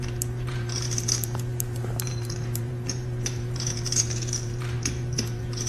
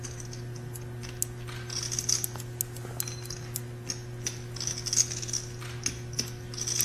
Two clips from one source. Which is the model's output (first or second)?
first